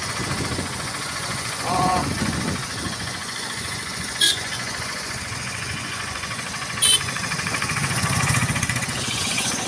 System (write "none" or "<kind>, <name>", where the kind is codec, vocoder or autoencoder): vocoder, Vocos